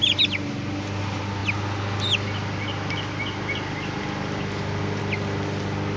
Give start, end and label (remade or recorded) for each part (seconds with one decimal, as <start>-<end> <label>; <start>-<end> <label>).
0.0-6.0 recorded